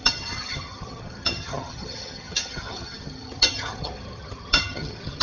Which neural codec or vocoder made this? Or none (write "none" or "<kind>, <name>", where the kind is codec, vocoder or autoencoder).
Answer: vocoder, HiFi-GAN